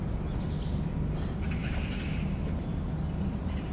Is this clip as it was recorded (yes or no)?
yes